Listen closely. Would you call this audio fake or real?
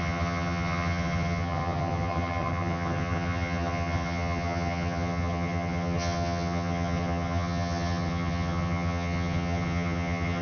fake